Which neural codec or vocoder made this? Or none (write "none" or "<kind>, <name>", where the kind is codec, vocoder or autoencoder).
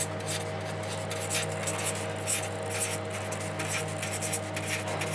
none